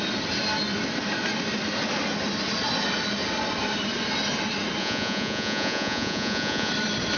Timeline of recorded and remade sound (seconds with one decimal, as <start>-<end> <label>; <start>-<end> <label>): 0.0-4.8 recorded; 4.8-6.7 remade; 6.7-7.2 recorded